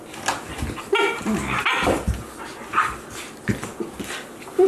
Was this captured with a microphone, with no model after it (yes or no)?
yes